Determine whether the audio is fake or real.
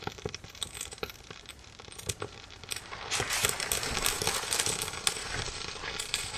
fake